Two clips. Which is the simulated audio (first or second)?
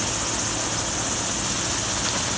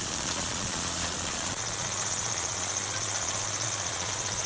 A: second